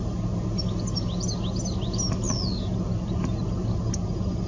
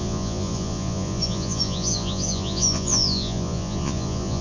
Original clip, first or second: first